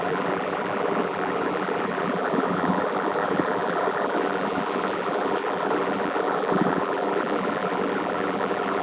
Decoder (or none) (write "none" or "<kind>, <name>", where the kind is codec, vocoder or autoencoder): vocoder, BigVGAN v2